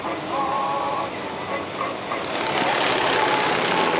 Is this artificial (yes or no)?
no